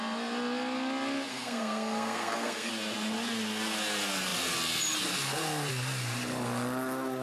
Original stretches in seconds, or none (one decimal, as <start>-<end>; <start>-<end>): 0.0-1.3; 2.7-7.2